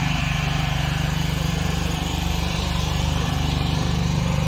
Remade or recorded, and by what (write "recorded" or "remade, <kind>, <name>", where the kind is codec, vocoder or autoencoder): remade, vocoder, BigVGAN v2